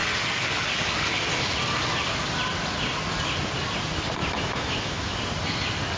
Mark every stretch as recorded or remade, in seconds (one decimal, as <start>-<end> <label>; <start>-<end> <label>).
0.0-4.2 recorded; 4.2-5.2 remade; 5.2-6.0 recorded